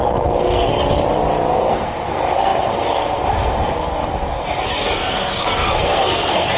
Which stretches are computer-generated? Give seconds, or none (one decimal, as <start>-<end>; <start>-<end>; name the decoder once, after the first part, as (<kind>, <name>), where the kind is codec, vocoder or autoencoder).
0.0-0.7 (codec, SNAC); 1.5-6.6